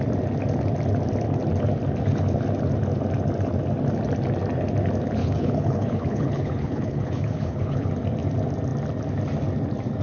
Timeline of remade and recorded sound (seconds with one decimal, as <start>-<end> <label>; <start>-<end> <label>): 0.0-5.2 recorded; 5.2-7.9 remade; 7.9-10.0 recorded